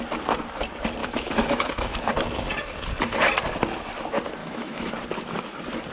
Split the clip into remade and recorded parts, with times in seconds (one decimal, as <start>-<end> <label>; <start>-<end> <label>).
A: 0.0-1.0 recorded; 1.0-2.1 remade; 2.1-4.4 recorded; 4.4-4.9 remade; 4.9-5.9 recorded